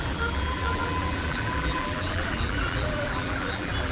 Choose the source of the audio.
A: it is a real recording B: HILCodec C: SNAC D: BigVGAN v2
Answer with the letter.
D